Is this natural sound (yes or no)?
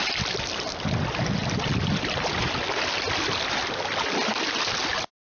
yes